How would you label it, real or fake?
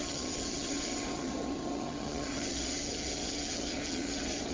fake